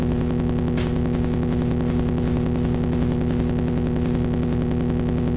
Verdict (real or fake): real